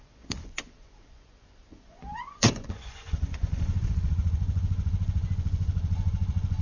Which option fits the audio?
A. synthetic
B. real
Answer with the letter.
A